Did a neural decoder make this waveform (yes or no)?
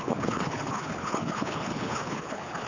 yes